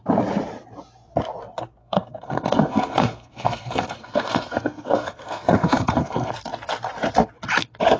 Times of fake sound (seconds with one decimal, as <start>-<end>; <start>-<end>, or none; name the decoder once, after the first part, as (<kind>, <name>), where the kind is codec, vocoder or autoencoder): 1.8-6.3 (codec, SNAC)